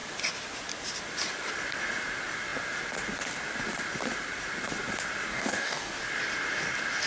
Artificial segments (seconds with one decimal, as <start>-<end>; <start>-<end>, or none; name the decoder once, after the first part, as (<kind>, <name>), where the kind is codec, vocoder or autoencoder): 5.3-5.9 (codec, DAC)